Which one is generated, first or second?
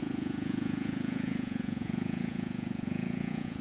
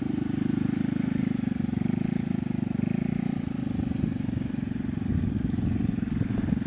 first